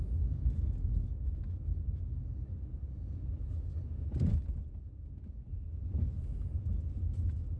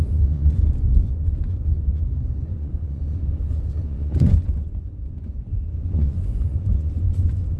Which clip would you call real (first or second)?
first